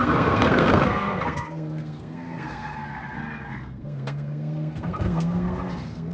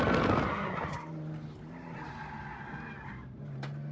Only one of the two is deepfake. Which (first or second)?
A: first